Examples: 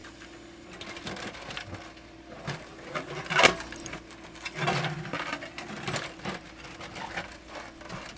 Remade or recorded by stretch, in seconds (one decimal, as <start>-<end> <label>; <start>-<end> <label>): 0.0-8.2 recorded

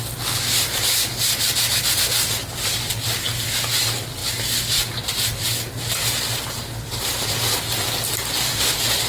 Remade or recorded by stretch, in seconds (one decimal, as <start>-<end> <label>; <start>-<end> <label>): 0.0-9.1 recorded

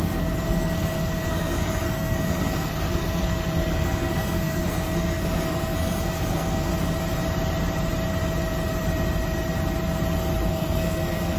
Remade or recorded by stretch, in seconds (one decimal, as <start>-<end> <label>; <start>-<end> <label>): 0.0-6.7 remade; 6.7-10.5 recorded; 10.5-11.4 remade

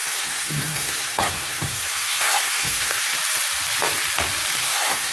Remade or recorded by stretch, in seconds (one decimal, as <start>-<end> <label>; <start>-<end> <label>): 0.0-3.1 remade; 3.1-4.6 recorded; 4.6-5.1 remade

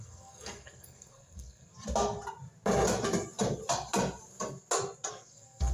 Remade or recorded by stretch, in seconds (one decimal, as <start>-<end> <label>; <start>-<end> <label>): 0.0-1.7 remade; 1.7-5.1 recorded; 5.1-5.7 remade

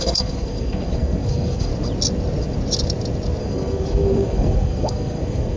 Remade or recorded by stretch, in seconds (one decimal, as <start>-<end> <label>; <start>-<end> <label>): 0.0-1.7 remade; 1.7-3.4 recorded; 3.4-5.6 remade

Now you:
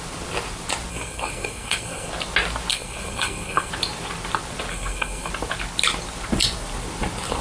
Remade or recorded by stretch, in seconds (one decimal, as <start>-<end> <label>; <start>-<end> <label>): 0.0-0.9 recorded; 0.9-2.1 remade; 2.1-2.7 recorded; 2.7-3.7 remade; 3.7-4.7 recorded; 4.7-5.3 remade; 5.3-7.4 recorded

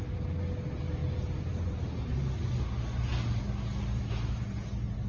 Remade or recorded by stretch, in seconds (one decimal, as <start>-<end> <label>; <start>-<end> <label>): 0.0-5.1 recorded